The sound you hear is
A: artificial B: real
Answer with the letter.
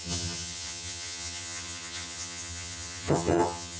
A